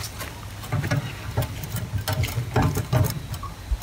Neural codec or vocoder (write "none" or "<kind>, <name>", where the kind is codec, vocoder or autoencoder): none